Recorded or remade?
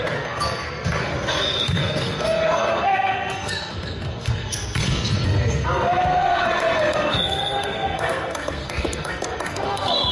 remade